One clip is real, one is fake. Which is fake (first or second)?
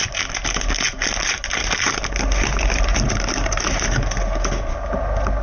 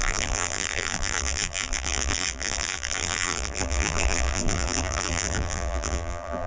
second